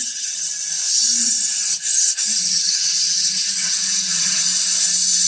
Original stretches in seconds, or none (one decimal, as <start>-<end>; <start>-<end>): 0.5-1.2; 4.4-5.3